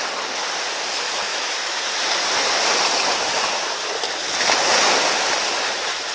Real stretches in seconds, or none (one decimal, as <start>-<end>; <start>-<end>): 0.0-1.3; 1.8-6.1